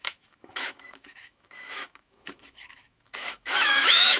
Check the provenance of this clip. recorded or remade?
remade